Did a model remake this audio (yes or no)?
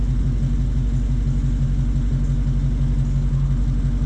no